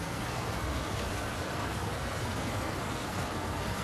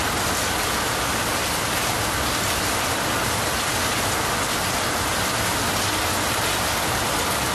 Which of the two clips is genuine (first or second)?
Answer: second